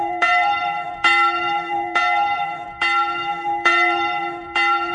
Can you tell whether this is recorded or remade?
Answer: remade